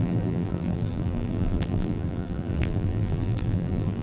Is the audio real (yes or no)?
no